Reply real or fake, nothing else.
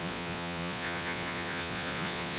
fake